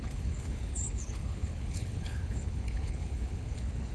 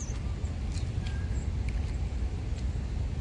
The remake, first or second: first